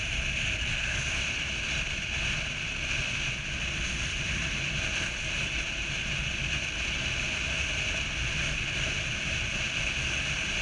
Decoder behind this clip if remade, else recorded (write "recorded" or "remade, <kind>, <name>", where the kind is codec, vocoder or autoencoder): recorded